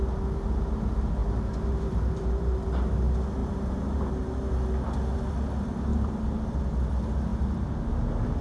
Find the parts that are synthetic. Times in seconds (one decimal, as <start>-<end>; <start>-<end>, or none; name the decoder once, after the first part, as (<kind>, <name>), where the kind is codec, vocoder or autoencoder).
1.2-2.6 (vocoder, BigVGAN v2); 3.4-4.1; 5.9-6.6